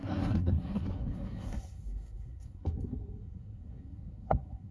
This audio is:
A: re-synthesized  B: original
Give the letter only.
A